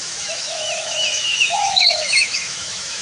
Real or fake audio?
fake